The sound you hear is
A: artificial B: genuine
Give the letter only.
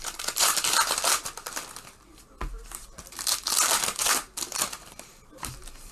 A